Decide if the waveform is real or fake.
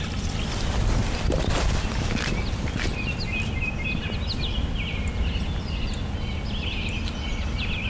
real